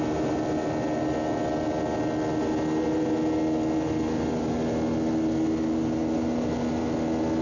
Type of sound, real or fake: real